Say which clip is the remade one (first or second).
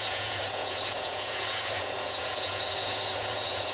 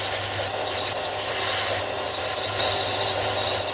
first